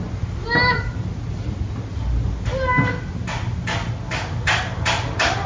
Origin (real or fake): real